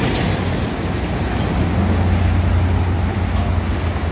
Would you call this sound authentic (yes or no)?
yes